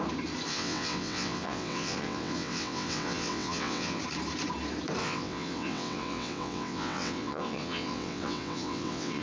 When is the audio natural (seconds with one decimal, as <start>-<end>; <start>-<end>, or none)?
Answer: 0.0-0.5; 4.0-5.0